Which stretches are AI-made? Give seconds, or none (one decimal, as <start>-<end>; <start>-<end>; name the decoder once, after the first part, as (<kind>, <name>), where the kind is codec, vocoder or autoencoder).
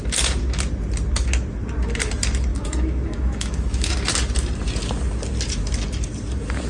2.5-3.9 (autoencoder, DAC-VAE)